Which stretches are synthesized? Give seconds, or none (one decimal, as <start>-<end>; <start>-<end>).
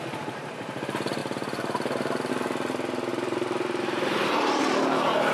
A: 1.2-2.3; 3.1-4.6